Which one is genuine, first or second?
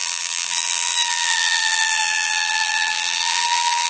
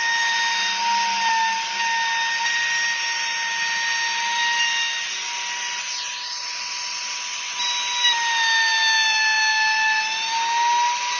second